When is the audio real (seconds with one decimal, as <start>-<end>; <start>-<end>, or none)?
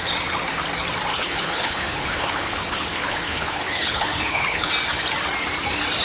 0.0-1.1; 4.7-6.0